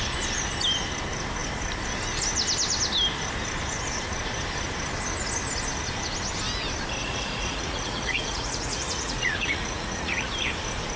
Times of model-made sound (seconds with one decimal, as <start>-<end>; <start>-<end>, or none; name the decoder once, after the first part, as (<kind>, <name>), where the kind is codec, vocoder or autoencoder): 7.0-10.3 (vocoder, Vocos)